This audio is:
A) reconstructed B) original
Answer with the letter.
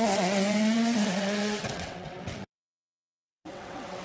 A